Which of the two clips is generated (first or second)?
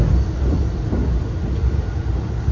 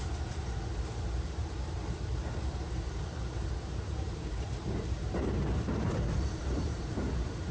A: second